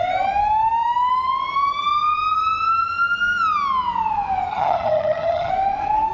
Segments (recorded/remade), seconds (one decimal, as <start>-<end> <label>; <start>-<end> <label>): 0.0-4.5 recorded; 4.5-5.5 remade; 5.5-6.1 recorded